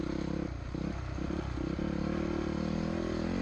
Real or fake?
real